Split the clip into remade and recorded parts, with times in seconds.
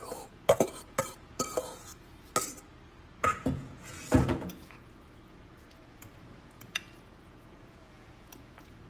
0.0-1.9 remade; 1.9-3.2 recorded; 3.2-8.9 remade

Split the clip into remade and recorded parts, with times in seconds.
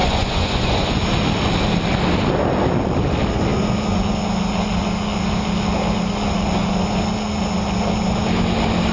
0.0-1.0 remade; 1.0-8.9 recorded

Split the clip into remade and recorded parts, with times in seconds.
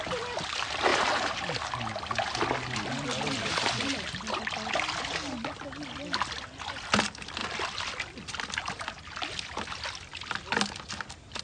0.0-11.4 recorded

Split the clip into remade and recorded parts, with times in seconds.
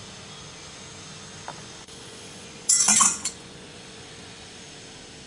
0.0-1.5 recorded; 1.5-4.7 remade; 4.7-5.3 recorded